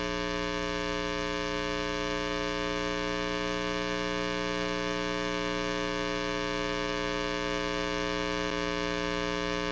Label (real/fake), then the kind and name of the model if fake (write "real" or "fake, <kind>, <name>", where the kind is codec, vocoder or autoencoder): real